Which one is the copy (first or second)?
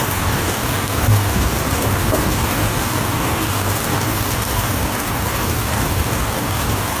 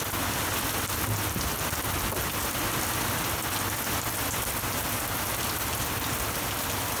first